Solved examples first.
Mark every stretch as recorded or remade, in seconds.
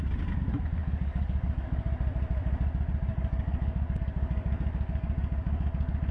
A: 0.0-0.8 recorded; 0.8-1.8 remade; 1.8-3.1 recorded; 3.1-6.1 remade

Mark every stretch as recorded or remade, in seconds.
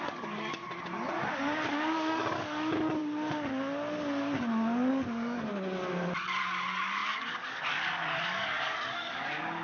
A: 0.0-0.6 remade; 0.6-1.4 recorded; 1.4-3.0 remade; 3.0-4.9 recorded; 4.9-5.5 remade; 5.5-6.4 recorded; 6.4-9.6 remade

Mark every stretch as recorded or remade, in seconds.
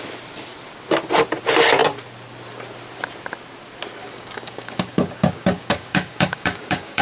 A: 0.0-4.0 recorded; 4.0-7.0 remade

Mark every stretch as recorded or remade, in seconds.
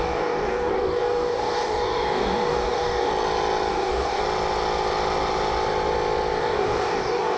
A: 0.0-3.1 remade; 3.1-3.7 recorded; 3.7-4.2 remade; 4.2-6.4 recorded; 6.4-7.4 remade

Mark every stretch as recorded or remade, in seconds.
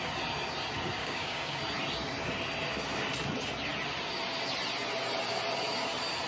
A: 0.0-1.0 recorded; 1.0-1.6 remade; 1.6-6.3 recorded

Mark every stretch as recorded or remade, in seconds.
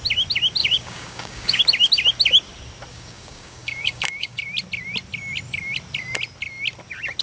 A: 0.0-0.6 recorded; 0.6-1.6 remade; 1.6-2.9 recorded; 2.9-4.4 remade; 4.4-7.2 recorded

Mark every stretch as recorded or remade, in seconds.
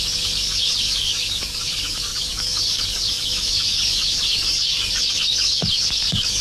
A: 0.0-6.4 remade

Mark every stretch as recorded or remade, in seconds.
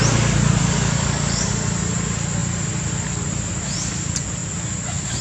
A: 0.0-0.6 recorded; 0.6-1.5 remade; 1.5-5.2 recorded